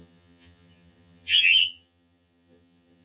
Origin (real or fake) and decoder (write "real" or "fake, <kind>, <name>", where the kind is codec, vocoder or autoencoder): fake, vocoder, HiFi-GAN